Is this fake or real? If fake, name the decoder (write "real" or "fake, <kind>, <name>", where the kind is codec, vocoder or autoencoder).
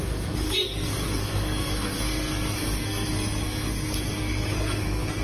fake, codec, SNAC